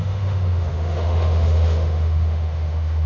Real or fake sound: fake